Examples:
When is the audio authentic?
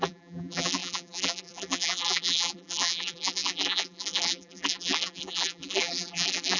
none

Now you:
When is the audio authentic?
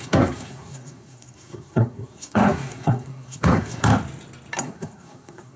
3.9-4.6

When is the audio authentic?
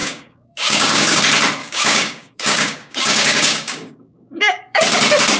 1.2-1.6; 4.8-5.4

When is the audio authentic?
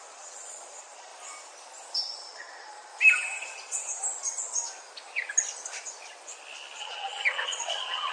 1.1-2.0; 2.9-6.8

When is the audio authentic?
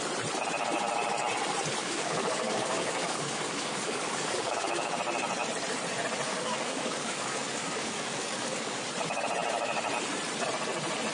0.0-1.8; 5.0-6.3; 8.8-11.1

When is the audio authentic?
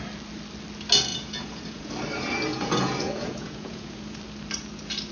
0.0-1.1; 1.9-2.5; 4.2-5.1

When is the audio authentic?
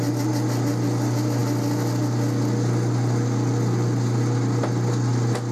0.0-5.5